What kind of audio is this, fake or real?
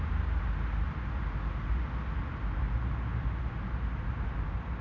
real